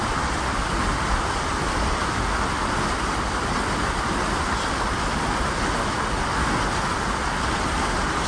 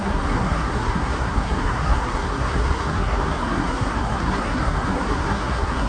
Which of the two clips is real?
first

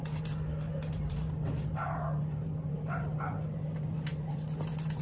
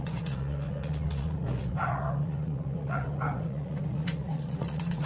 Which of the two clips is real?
first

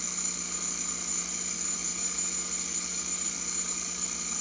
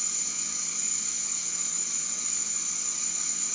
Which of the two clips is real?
first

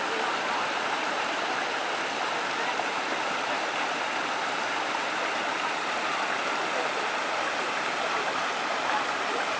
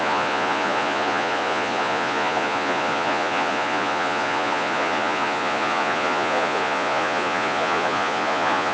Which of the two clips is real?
first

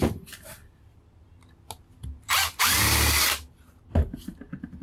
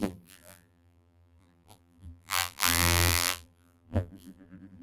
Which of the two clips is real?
first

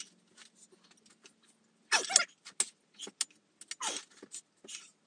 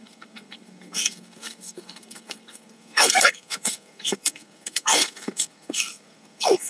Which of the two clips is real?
first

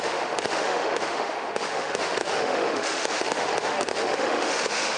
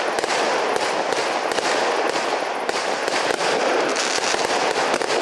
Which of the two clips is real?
second